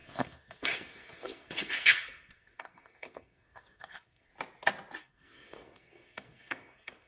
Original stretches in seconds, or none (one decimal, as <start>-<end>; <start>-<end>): 4.3-5.0